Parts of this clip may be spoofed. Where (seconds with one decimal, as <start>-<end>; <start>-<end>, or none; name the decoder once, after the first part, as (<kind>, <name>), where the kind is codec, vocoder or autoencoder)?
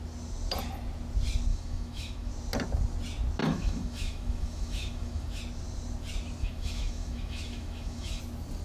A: 1.5-2.3 (autoencoder, DAC-VAE); 3.4-5.4; 6.4-8.2